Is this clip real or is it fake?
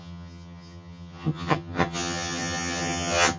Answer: fake